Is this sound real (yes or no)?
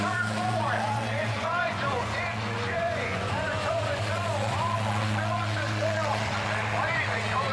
no